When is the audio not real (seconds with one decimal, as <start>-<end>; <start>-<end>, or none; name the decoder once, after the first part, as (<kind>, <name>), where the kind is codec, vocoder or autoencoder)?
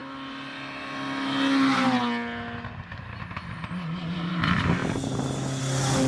none